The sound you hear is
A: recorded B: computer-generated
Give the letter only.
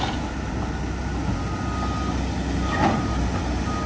A